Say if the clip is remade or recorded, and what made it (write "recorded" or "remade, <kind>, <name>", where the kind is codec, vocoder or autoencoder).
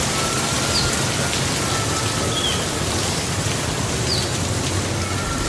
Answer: recorded